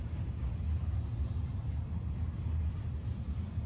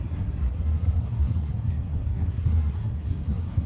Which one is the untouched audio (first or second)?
first